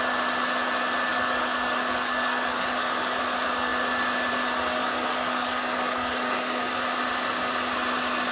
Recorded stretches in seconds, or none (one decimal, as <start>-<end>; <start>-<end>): 0.0-1.1; 3.2-4.8; 6.6-8.3